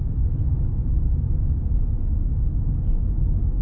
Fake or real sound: real